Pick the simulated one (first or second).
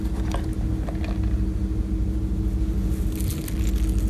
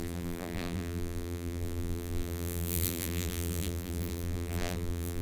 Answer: second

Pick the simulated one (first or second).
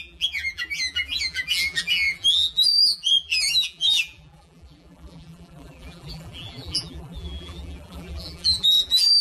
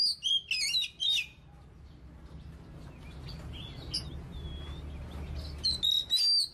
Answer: first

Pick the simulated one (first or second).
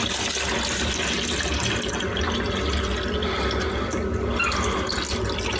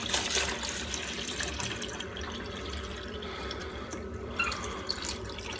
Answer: second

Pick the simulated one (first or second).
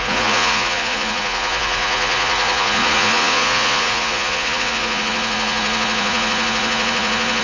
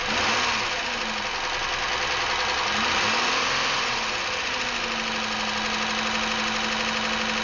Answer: first